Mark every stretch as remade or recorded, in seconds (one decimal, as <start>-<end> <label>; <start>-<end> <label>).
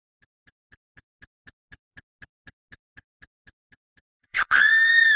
0.0-4.2 recorded; 4.2-4.7 remade; 4.7-5.2 recorded